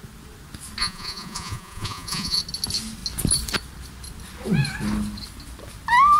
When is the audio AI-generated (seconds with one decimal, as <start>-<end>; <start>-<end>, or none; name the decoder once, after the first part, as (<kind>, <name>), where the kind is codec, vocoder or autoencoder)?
0.8-2.4 (vocoder, Vocos)